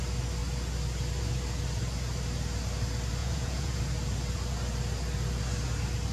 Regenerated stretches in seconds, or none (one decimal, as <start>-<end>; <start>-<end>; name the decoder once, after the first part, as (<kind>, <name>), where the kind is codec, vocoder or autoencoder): 3.2-3.8 (vocoder, Vocos)